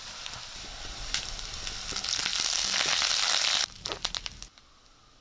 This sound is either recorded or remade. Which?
recorded